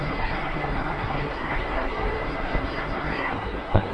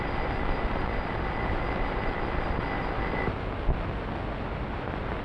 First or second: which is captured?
second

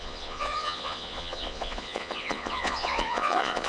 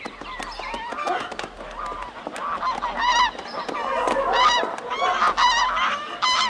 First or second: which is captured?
second